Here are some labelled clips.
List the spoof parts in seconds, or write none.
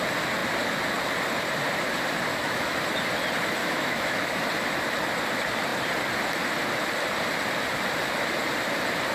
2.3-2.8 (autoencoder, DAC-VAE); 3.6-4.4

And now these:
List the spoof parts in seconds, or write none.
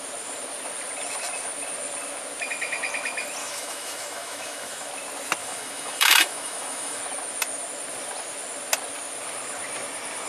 3.4-4.9 (autoencoder, DAC-VAE); 5.4-7.0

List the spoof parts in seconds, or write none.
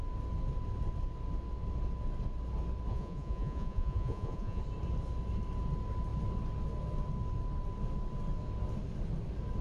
2.9-4.6 (vocoder, Vocos)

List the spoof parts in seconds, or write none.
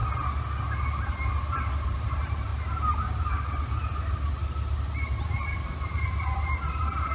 1.4-2.5 (vocoder, BigVGAN v2); 5.2-7.1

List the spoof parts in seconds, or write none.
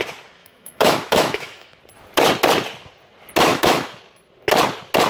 0.4-1.8 (autoencoder, DAC-VAE); 3.5-4.0